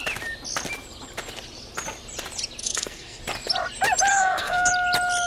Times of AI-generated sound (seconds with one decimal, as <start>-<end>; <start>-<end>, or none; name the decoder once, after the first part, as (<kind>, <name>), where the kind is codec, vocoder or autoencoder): 2.6-3.2 (codec, SNAC); 4.1-4.7